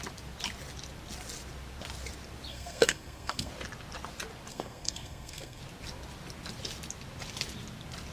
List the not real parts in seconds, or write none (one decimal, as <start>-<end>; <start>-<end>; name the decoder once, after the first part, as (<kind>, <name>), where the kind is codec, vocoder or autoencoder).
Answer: 2.5-3.5 (codec, SNAC); 4.5-5.6